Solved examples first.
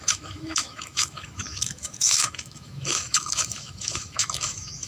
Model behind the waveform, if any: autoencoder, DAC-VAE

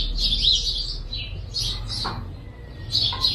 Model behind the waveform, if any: none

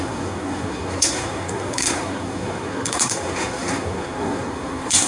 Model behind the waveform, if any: codec, SNAC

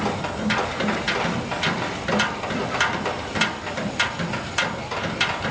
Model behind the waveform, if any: none